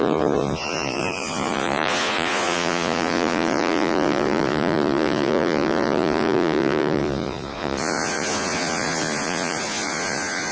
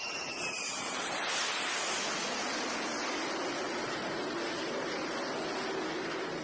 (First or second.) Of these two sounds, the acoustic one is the second